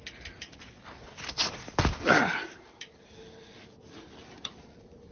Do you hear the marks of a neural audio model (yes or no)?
no